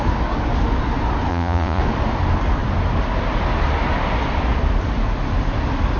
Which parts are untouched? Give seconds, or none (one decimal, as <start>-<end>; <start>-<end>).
0.0-1.3; 1.8-6.0